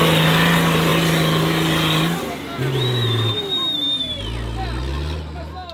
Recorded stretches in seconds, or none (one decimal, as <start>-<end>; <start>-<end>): 0.0-5.7